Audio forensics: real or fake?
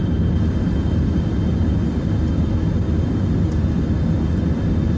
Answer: real